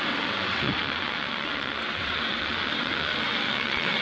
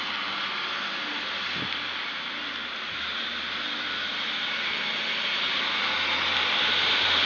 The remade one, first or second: first